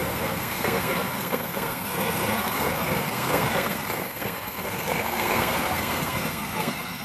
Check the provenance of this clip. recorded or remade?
remade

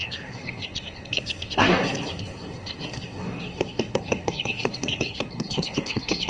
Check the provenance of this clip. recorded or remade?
remade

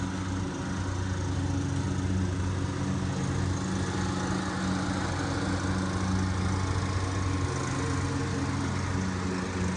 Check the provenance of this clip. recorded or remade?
recorded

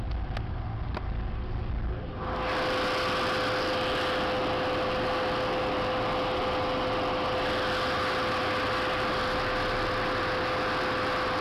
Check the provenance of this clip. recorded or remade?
recorded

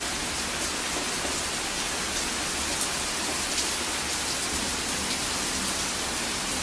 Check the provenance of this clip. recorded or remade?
recorded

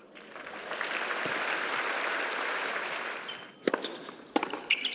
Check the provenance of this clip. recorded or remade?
recorded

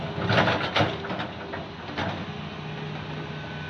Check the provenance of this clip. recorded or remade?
recorded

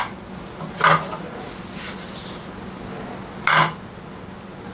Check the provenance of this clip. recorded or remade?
recorded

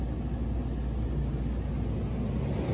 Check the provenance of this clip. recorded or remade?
recorded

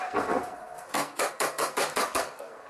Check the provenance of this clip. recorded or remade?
remade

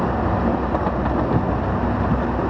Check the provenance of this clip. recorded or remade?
recorded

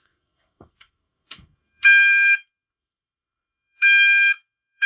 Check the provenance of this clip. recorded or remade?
remade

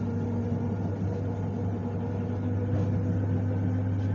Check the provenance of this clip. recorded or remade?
recorded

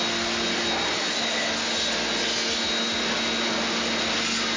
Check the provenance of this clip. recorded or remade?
recorded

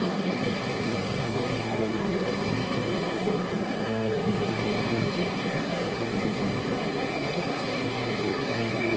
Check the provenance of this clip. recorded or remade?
remade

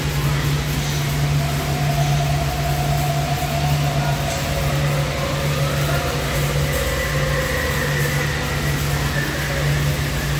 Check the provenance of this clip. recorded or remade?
recorded